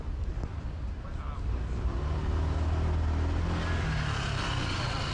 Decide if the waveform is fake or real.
real